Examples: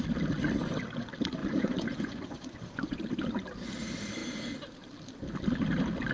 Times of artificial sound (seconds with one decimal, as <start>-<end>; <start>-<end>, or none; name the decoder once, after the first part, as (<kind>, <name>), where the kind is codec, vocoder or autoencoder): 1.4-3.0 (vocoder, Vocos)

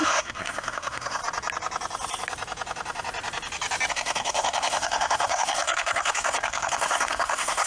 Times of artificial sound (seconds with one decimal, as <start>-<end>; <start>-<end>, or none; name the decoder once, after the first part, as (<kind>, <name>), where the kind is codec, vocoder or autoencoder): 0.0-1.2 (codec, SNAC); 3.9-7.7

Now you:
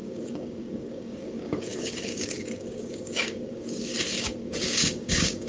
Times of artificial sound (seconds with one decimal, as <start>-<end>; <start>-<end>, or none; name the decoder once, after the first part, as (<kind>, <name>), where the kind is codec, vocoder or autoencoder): 0.0-5.5 (codec, DAC)

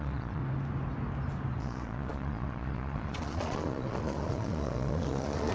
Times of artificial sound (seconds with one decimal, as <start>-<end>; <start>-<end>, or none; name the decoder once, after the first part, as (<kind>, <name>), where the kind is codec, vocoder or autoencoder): 0.0-0.4 (vocoder, Vocos); 1.6-5.5

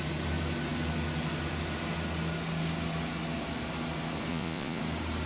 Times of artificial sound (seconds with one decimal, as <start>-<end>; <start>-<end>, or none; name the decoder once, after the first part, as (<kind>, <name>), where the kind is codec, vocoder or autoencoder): 4.3-4.8 (vocoder, Vocos)

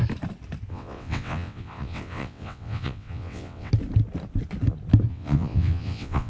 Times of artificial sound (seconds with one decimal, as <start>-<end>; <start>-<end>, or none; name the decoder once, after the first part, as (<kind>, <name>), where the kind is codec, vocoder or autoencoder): 0.7-3.7 (vocoder, WaveNeXt); 5.1-6.3